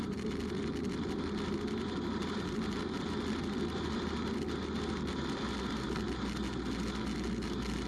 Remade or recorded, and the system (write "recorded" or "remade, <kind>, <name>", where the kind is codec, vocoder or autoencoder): recorded